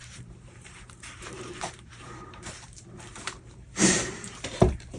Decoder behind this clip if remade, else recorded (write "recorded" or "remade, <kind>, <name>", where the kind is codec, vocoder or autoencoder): remade, vocoder, BigVGAN v2